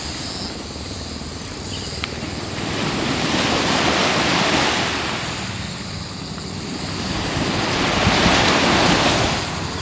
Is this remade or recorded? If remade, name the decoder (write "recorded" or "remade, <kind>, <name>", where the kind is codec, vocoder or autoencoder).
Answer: recorded